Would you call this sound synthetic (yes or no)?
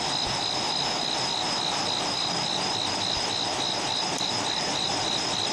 no